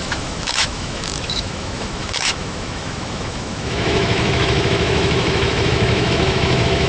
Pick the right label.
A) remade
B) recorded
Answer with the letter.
A